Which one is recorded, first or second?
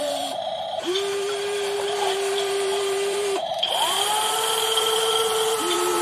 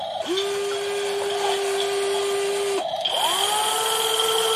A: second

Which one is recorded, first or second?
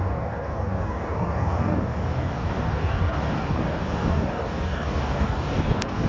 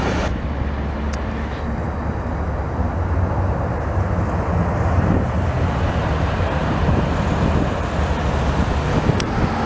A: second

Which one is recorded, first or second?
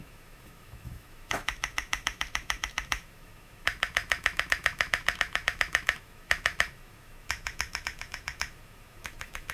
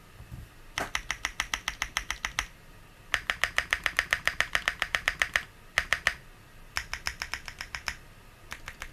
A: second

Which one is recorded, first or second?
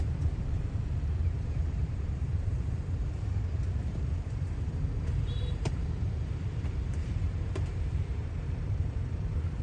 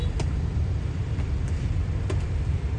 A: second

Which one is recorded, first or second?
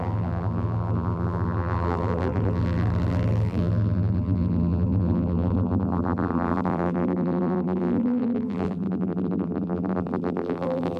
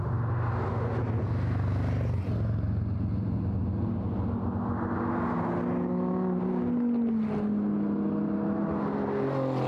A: second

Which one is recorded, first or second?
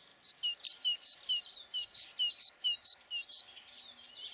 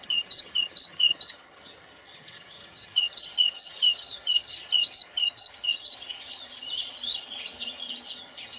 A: first